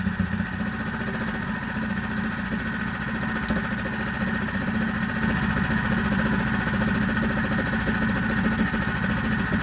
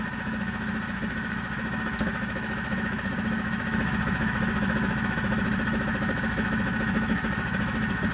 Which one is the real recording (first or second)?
first